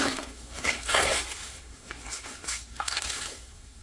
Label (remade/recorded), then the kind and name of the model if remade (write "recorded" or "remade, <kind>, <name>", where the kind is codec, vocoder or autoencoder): remade, codec, SNAC